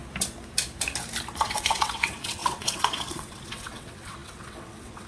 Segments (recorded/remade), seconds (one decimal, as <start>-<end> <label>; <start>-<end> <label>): 0.0-1.4 recorded; 1.4-5.1 remade